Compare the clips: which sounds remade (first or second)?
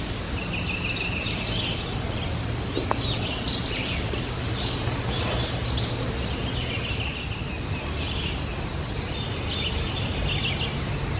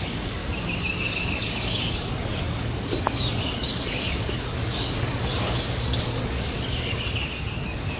second